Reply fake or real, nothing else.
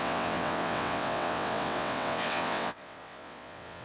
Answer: fake